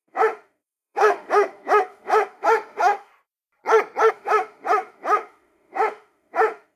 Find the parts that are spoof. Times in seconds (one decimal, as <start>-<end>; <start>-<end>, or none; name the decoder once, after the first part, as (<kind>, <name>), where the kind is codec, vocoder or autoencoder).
0.0-3.1 (autoencoder, DAC-VAE); 4.1-6.8